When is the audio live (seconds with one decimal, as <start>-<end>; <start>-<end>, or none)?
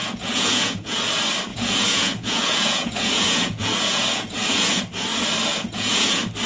1.0-1.5; 4.8-5.5; 6.1-6.5